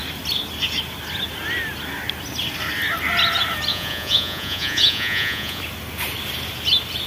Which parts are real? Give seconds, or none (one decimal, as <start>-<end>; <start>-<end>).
0.0-3.7; 5.6-7.1